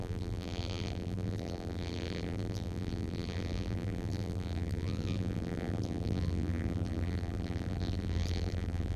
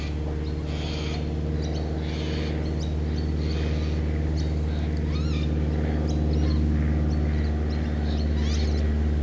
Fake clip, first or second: first